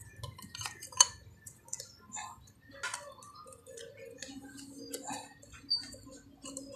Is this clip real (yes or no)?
yes